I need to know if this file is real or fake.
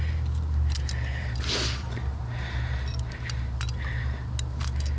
real